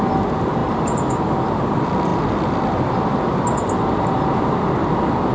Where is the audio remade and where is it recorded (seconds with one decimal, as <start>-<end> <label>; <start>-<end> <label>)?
0.0-0.6 recorded; 0.6-1.2 remade; 1.2-5.3 recorded